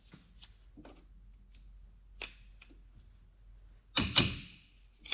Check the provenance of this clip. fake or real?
real